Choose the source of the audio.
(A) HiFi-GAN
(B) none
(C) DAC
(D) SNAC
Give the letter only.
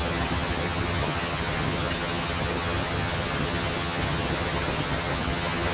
A